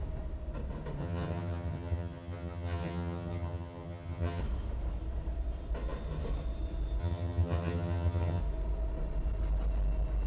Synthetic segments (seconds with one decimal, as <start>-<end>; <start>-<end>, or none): 1.0-4.4; 7.0-8.4